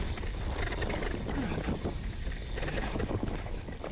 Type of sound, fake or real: real